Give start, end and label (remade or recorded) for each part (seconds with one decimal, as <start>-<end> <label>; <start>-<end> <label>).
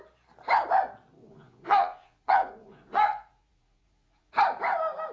0.0-1.2 recorded; 1.2-4.3 remade; 4.3-5.1 recorded